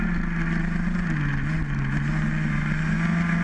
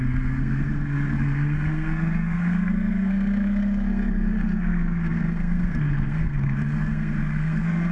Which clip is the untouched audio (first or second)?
first